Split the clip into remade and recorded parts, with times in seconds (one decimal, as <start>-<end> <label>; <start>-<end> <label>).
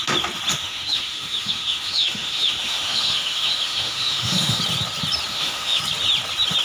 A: 0.0-0.6 recorded; 0.6-4.6 remade; 4.6-5.3 recorded; 5.3-5.8 remade; 5.8-6.6 recorded